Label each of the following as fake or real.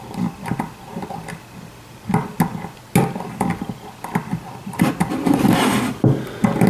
real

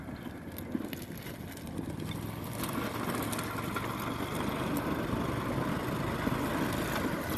real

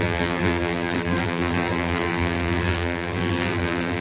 fake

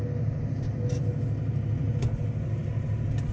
real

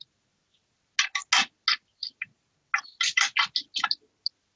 real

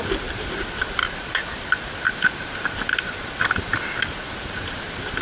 real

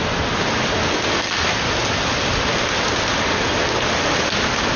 real